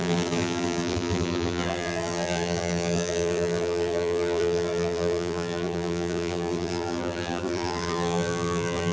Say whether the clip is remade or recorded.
remade